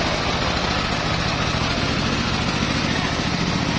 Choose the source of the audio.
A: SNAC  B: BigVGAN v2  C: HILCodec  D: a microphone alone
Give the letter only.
D